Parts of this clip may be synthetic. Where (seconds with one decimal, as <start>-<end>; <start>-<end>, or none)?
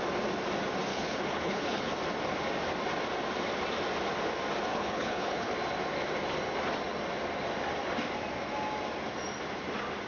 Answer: 0.9-1.9; 4.7-5.5